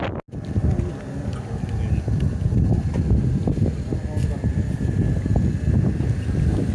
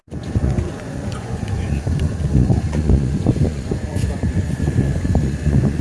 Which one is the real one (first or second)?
first